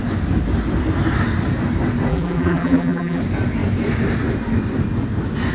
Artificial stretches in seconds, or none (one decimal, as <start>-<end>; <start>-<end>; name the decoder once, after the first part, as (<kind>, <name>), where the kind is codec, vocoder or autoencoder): 2.1-3.2 (vocoder, BigVGAN v2)